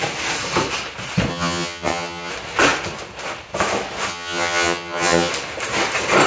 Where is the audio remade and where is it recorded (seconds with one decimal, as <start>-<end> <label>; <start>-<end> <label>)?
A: 0.0-1.3 recorded; 1.3-2.3 remade; 2.3-4.1 recorded; 4.1-5.3 remade; 5.3-6.3 recorded